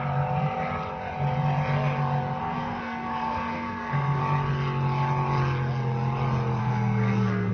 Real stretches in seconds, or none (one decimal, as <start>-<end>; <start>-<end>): 0.0-2.4; 4.2-6.6